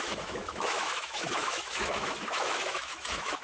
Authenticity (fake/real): fake